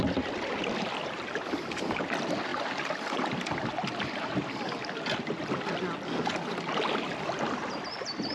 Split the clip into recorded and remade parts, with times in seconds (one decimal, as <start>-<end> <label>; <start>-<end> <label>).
0.0-2.5 remade; 2.5-7.2 recorded; 7.2-8.3 remade